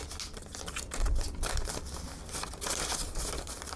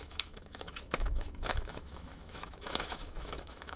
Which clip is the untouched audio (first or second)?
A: first